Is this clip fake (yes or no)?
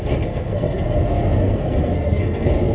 yes